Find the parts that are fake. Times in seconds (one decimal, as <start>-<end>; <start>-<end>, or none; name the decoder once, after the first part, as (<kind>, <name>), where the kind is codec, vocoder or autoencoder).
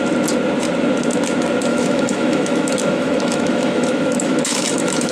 1.7-5.1 (autoencoder, DAC-VAE)